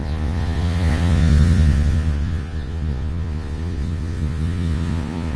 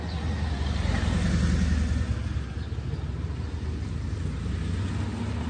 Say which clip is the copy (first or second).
first